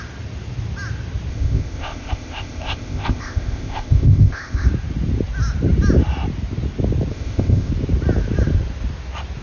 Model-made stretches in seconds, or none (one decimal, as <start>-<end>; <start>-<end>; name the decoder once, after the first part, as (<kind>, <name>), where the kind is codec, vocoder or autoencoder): 1.3-4.7 (codec, ZipCodec); 7.1-7.7